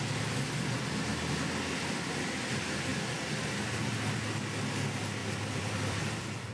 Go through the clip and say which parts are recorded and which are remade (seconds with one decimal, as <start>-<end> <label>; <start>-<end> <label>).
0.0-5.2 recorded; 5.2-6.5 remade